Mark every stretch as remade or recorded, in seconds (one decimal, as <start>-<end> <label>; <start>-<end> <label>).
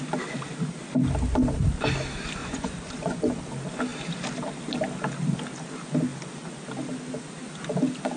0.0-2.4 recorded; 2.4-3.2 remade; 3.2-8.2 recorded